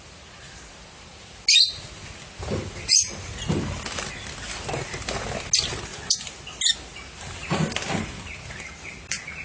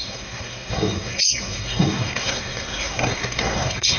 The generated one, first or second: second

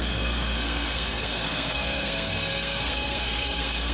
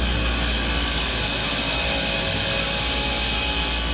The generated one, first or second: first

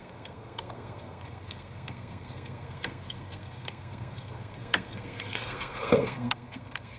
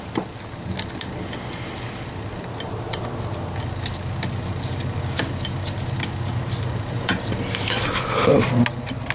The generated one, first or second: first